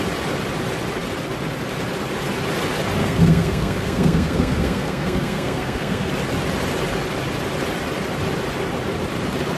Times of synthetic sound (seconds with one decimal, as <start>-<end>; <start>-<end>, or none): 3.0-6.1